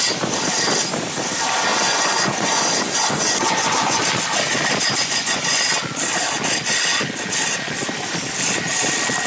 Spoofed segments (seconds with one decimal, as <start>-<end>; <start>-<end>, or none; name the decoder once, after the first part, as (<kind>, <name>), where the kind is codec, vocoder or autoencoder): 1.7-4.0 (vocoder, Vocos); 5.0-5.6